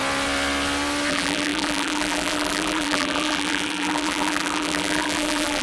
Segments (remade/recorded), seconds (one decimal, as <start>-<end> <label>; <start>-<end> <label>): 0.0-1.1 recorded; 1.1-5.6 remade